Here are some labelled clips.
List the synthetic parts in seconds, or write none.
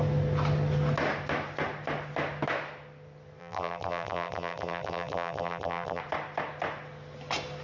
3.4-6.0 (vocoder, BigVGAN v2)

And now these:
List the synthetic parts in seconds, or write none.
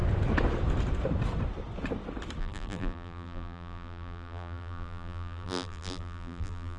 2.4-6.8 (vocoder, BigVGAN v2)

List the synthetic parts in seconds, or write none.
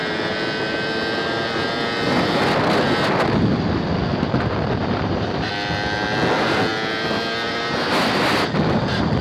4.1-5.5 (vocoder, BigVGAN v2)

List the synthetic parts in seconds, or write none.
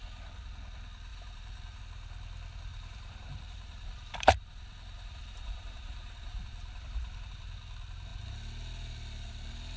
1.1-1.8 (vocoder, BigVGAN v2); 2.7-7.3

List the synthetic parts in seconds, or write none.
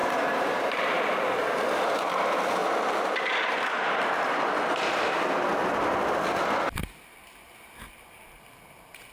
0.0-1.0 (vocoder, BigVGAN v2)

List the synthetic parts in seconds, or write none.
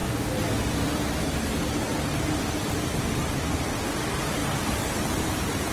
3.4-4.4 (vocoder, BigVGAN v2); 5.3-5.7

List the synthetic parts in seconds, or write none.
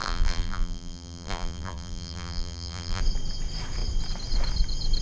0.0-3.0 (vocoder, BigVGAN v2)